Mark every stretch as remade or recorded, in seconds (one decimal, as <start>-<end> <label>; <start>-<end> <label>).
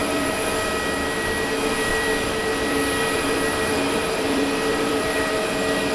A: 0.0-0.7 remade; 0.7-1.9 recorded; 1.9-5.4 remade; 5.4-5.9 recorded